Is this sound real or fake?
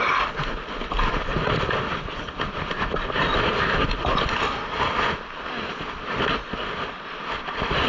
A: real